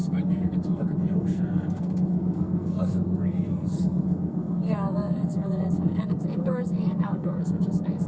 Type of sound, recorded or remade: remade